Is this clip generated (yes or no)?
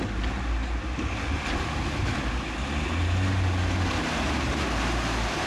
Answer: no